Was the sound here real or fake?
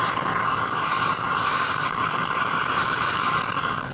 fake